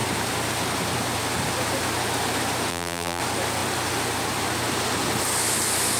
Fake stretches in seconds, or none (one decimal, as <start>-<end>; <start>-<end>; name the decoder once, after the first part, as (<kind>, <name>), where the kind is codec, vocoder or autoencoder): 2.7-3.2 (vocoder, BigVGAN v2)